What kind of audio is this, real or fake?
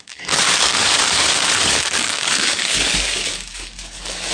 fake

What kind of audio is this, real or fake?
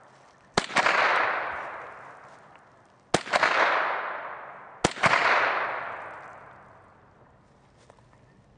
real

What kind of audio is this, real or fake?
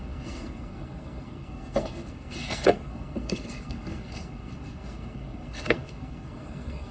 fake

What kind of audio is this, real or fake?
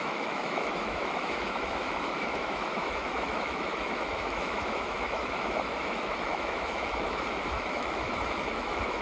fake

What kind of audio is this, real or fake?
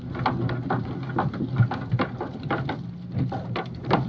real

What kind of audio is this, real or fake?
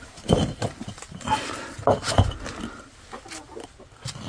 real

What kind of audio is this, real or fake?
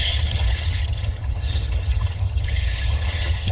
fake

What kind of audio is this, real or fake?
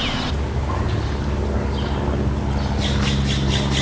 real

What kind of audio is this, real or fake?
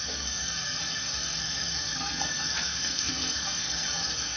fake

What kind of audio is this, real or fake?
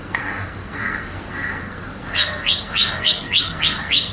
fake